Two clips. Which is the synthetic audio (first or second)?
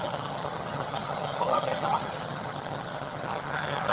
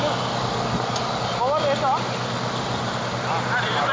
first